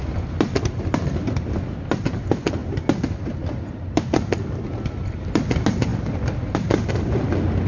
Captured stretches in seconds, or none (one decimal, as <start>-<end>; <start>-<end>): 0.0-7.7